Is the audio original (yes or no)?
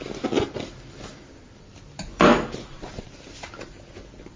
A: yes